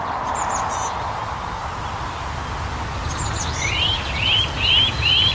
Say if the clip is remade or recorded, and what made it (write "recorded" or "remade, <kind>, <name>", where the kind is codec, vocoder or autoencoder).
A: recorded